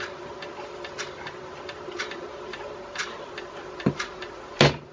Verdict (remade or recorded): recorded